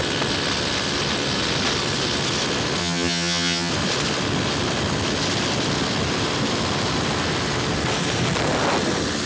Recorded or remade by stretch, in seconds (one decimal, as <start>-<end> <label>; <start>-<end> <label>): 0.0-2.8 recorded; 2.8-3.7 remade; 3.7-9.3 recorded